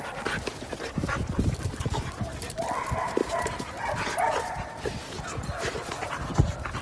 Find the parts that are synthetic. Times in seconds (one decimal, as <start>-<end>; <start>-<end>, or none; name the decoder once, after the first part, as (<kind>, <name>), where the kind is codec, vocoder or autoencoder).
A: none